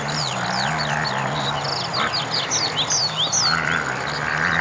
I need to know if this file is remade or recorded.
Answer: recorded